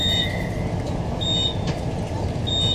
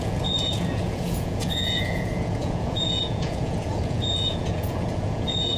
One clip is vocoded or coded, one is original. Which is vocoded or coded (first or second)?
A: second